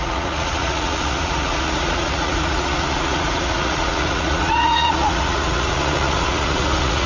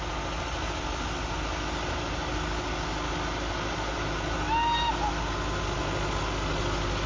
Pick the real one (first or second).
second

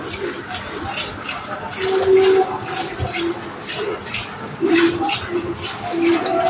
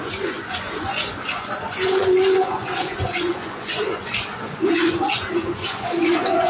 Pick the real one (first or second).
first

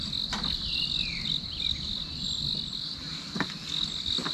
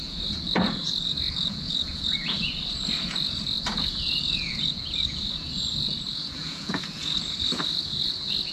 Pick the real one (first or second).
first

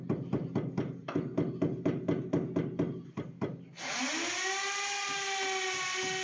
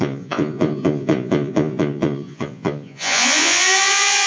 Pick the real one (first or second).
first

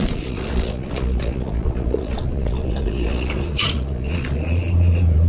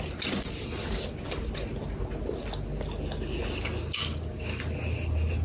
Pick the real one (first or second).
second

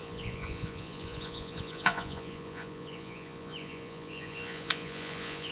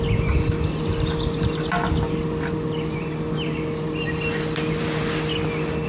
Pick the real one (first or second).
second